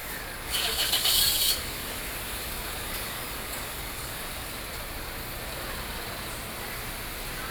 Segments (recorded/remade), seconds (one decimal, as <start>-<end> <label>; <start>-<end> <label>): 0.0-4.5 remade; 4.5-7.5 recorded